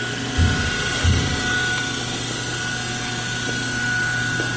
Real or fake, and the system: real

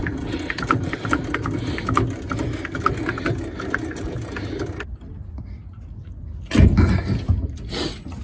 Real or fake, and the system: real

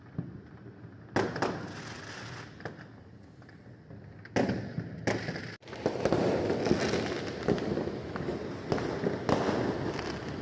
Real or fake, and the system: real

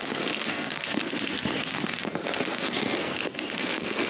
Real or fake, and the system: fake, codec, SNAC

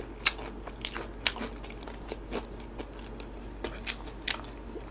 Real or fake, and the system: real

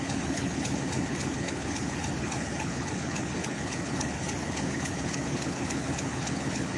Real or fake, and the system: fake, codec, HILCodec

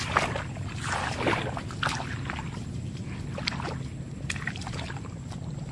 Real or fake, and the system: real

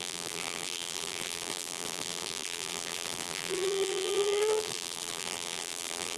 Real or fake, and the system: fake, vocoder, BigVGAN v2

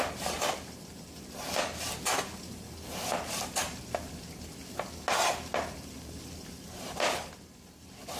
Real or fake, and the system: real